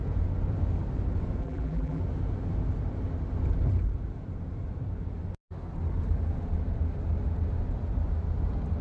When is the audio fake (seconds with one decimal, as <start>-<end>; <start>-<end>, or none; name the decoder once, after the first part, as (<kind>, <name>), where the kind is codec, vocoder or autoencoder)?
1.4-2.0 (vocoder, BigVGAN v2)